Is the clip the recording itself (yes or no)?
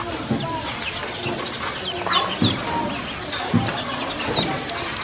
yes